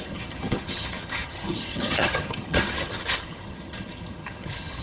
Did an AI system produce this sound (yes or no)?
yes